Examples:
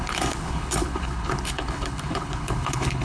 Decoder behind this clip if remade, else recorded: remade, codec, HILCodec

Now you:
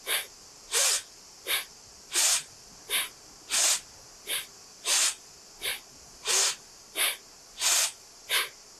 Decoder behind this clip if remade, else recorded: recorded